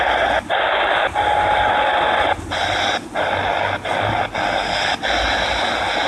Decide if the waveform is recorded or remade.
recorded